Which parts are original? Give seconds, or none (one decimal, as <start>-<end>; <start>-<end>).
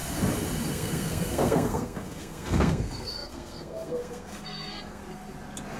0.0-0.7; 5.0-5.8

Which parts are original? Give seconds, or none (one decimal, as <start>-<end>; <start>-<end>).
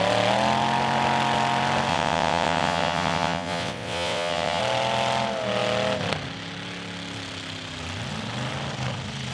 0.0-1.9; 4.6-9.3